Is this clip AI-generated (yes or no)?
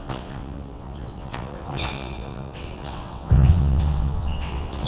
yes